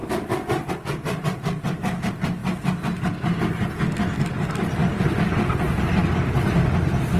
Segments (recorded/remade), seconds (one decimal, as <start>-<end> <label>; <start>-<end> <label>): 0.0-2.4 recorded; 2.4-3.4 remade; 3.4-4.8 recorded; 4.8-6.0 remade; 6.0-7.2 recorded